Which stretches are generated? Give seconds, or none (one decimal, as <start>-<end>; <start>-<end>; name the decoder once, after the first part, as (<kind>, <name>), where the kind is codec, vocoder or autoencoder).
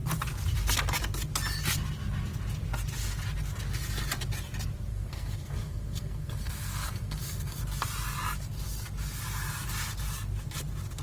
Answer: 4.9-7.6 (codec, SNAC)